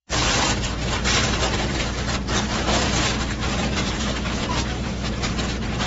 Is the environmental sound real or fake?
fake